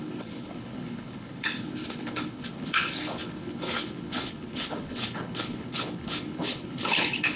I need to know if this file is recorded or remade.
remade